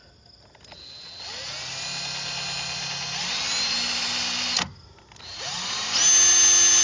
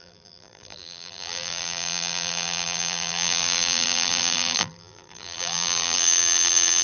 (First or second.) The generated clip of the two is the second